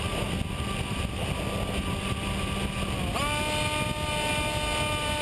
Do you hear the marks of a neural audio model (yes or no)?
no